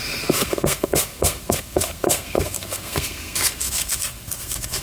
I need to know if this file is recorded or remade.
remade